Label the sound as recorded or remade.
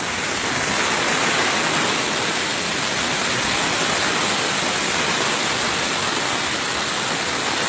recorded